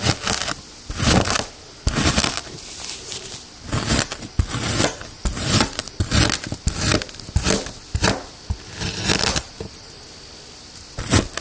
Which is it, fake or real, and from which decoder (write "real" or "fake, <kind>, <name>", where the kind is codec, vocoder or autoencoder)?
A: real